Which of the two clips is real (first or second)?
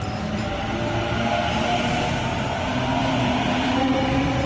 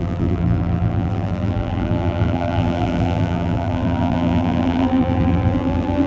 first